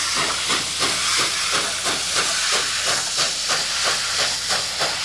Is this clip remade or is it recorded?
recorded